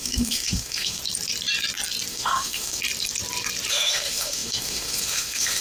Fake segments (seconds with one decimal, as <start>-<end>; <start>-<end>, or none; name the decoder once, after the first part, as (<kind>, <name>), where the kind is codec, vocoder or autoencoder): 0.0-1.0 (autoencoder, DAC-VAE); 2.1-2.8; 3.7-5.6